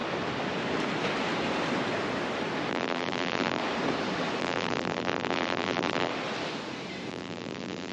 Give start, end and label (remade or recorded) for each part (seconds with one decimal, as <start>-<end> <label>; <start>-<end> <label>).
0.0-2.7 recorded; 2.7-3.6 remade; 3.6-4.4 recorded; 4.4-6.1 remade; 6.1-7.1 recorded; 7.1-7.9 remade

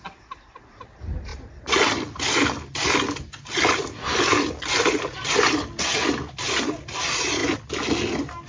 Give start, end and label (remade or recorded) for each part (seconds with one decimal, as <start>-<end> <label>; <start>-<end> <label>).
0.0-8.5 recorded

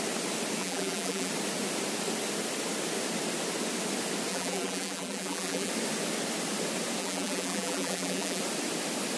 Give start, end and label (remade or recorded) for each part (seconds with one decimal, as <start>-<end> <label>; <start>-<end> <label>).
0.0-0.6 recorded; 0.6-1.3 remade; 1.3-4.3 recorded; 4.3-5.7 remade; 5.7-7.0 recorded; 7.0-8.4 remade; 8.4-9.2 recorded

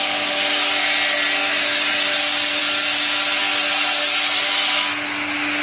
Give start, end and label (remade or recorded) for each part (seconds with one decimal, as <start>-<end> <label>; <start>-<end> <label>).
0.0-1.4 recorded; 1.4-1.9 remade; 1.9-5.6 recorded

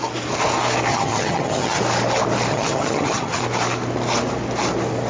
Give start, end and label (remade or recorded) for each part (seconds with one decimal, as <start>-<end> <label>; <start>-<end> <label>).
0.0-0.9 recorded; 0.9-1.8 remade; 1.8-2.5 recorded; 2.5-3.4 remade; 3.4-5.1 recorded

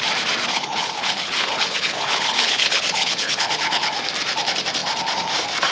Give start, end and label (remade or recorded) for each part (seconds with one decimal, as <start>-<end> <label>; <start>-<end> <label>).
0.0-0.5 recorded; 0.5-3.9 remade; 3.9-5.7 recorded

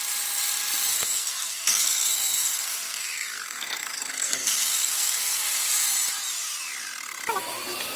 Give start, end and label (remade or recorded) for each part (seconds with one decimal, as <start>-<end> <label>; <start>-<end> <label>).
0.0-0.9 recorded; 0.9-5.7 remade; 5.7-8.0 recorded

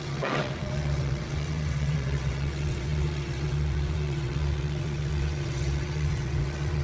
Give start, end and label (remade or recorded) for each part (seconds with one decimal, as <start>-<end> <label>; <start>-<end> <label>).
0.0-6.8 remade